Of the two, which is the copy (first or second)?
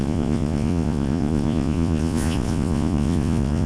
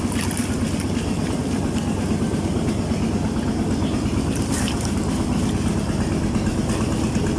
first